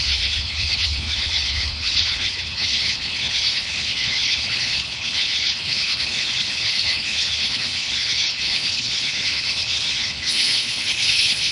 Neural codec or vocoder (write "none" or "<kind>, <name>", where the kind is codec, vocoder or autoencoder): codec, HILCodec